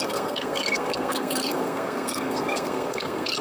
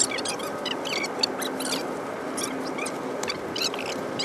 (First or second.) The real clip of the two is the second